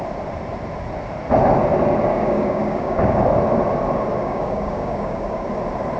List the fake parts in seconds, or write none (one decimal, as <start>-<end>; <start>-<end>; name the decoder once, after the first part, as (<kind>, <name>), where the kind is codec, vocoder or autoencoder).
2.1-3.2 (codec, DAC); 4.2-5.5

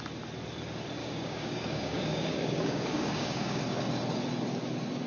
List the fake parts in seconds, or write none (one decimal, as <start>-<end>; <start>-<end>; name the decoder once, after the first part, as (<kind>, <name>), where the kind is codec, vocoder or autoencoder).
1.0-3.6 (codec, DAC)

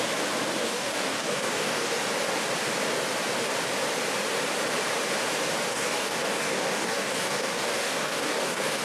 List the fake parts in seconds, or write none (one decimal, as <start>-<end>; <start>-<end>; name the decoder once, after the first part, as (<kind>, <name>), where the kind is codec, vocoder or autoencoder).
0.6-2.0 (codec, DAC); 5.7-8.8

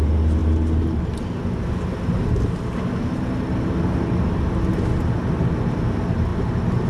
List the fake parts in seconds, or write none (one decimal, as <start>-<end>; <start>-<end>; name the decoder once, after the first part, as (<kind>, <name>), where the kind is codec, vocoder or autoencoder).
none

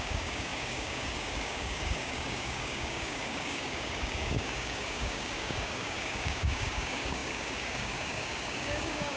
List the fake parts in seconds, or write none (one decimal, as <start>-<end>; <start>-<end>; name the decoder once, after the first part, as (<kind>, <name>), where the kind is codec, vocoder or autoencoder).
0.0-9.2 (codec, DAC)

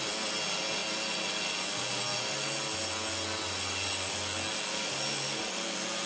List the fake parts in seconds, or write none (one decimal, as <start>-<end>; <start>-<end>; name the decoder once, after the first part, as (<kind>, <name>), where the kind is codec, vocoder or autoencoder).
none

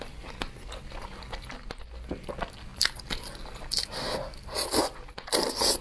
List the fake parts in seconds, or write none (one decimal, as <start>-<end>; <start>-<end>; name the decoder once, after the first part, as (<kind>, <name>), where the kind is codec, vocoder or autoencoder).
none